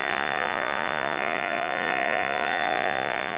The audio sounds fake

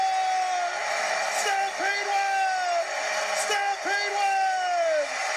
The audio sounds real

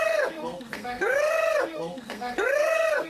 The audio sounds fake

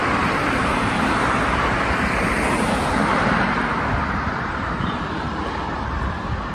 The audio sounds fake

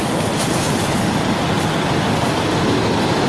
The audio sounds real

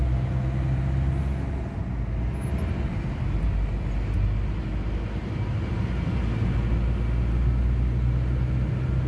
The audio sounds real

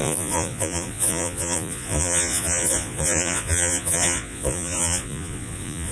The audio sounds fake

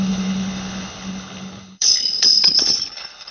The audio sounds fake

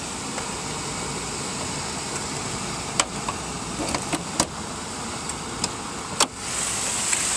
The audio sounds real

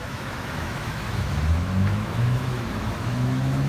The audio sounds fake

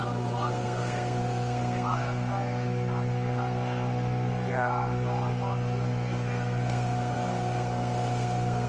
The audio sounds fake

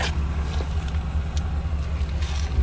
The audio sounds real